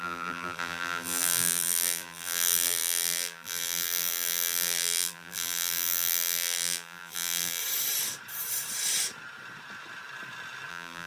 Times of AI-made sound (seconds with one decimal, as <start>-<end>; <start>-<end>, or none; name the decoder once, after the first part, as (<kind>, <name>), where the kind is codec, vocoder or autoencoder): 0.0-7.6 (vocoder, BigVGAN v2); 10.7-11.1